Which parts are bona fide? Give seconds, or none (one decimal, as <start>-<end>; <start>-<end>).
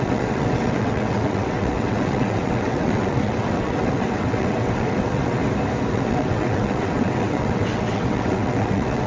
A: 5.4-5.9